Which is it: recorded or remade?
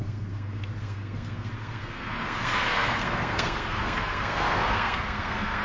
remade